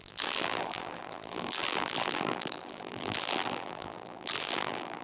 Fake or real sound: fake